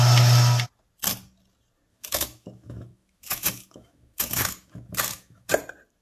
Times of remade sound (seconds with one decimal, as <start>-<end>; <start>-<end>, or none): 1.9-5.5